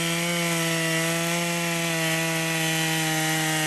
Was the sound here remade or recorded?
recorded